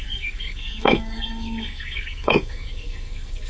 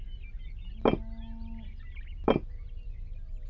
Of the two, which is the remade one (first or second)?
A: first